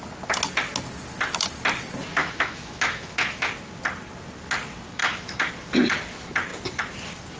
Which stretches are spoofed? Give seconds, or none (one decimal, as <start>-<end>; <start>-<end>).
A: 2.2-3.5; 5.0-5.5